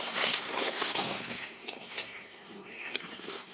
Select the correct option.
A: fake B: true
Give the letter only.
A